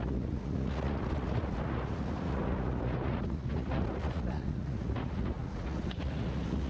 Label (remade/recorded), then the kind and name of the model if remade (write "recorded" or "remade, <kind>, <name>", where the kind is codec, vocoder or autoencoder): remade, vocoder, Vocos